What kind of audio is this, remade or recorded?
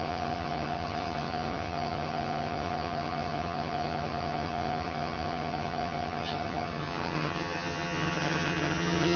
remade